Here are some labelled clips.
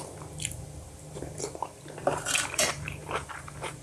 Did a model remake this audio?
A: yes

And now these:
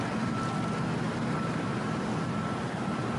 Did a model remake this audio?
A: no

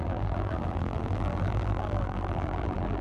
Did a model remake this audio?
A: yes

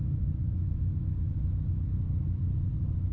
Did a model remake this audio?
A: no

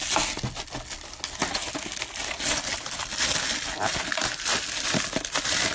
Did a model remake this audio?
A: no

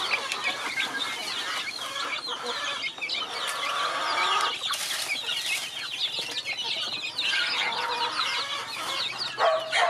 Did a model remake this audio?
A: no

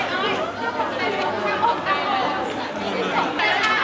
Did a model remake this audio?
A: no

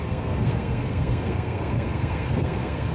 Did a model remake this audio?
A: yes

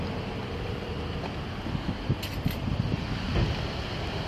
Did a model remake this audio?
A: no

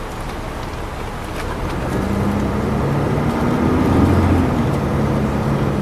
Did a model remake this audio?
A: no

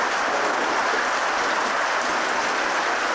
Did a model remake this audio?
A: no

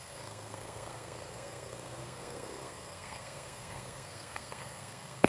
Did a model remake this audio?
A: yes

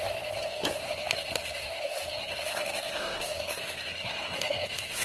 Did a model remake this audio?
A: yes